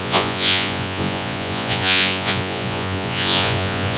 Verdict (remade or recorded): remade